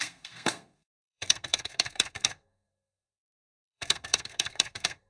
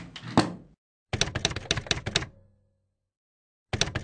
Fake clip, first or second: first